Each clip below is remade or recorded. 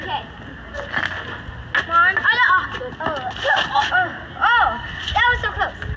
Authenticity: recorded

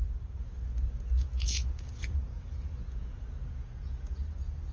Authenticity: remade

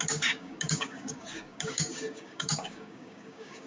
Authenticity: remade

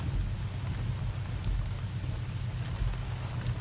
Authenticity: recorded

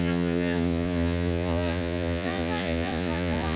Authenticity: remade